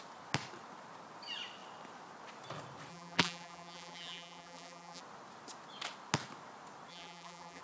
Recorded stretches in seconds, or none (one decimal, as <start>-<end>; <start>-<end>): 0.0-2.9; 5.0-6.9